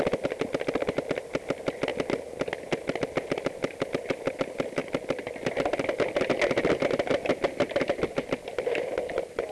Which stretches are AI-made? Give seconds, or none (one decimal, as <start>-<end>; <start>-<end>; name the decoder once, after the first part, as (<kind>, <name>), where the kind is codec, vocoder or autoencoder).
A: none